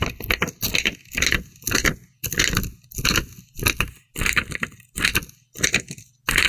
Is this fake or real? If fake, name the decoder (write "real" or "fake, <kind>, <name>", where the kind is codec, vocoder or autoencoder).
real